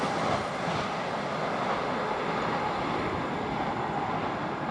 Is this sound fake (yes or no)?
no